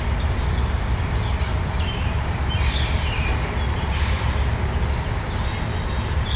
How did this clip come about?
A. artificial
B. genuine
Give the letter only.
B